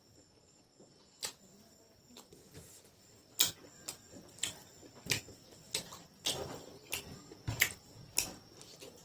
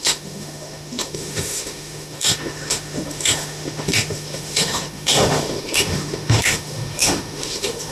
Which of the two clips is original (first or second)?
first